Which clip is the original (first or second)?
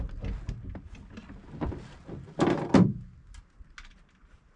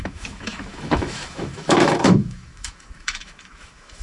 first